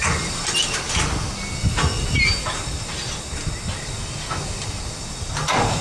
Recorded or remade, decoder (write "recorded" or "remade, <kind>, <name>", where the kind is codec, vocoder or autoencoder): recorded